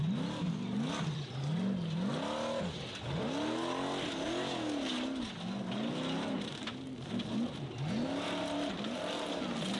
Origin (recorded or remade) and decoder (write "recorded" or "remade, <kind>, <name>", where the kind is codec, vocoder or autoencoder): recorded